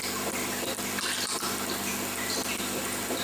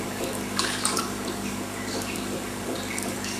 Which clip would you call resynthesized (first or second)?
second